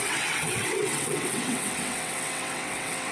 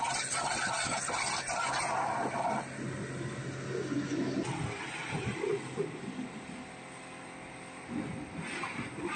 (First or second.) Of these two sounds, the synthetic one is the first